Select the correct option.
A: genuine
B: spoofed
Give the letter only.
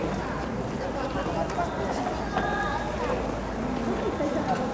A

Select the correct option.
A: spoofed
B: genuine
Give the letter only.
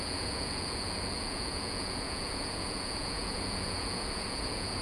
A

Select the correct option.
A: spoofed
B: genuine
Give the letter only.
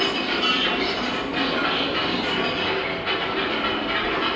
B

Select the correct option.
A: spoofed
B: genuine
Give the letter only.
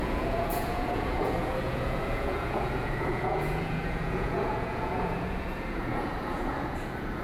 A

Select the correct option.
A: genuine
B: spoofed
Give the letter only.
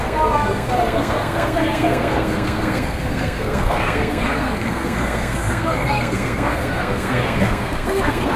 B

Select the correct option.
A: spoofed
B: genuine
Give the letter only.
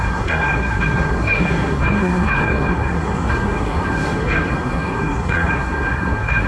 A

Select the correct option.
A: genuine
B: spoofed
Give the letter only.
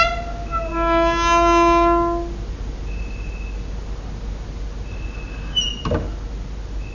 A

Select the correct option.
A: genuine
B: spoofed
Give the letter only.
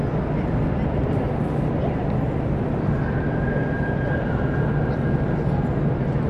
A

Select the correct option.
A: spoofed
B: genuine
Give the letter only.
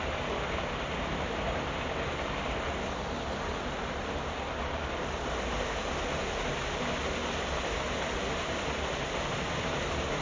B